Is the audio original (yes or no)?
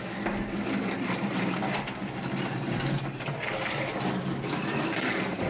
yes